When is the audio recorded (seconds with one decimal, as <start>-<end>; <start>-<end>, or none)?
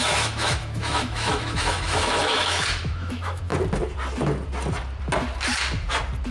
3.5-6.3